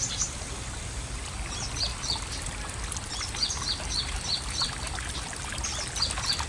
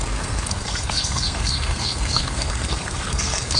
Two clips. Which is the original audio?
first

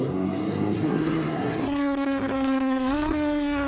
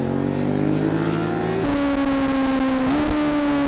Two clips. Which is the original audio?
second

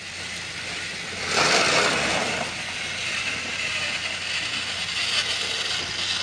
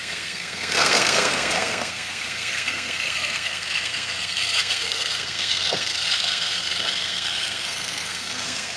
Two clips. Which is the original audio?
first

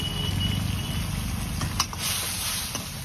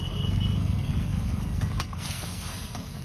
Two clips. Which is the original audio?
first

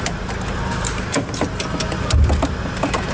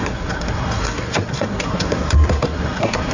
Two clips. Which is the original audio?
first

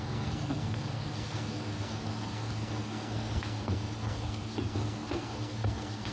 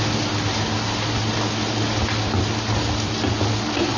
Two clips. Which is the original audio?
second